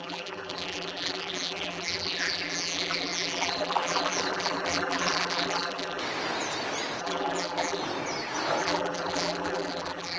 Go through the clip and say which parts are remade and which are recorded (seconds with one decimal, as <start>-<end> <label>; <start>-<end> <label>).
0.0-6.0 remade; 6.0-7.0 recorded; 7.0-7.8 remade; 7.8-8.6 recorded; 8.6-10.2 remade